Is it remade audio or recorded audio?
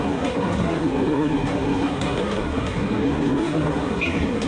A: remade